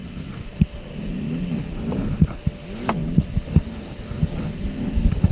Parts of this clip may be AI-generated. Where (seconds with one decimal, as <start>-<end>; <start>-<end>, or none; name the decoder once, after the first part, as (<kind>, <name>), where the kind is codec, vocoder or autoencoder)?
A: none